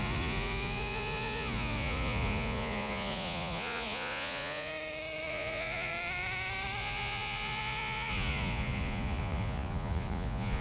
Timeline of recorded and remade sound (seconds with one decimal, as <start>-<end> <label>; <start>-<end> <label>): 0.0-4.7 remade; 4.7-5.3 recorded; 5.3-5.9 remade; 5.9-6.8 recorded; 6.8-10.6 remade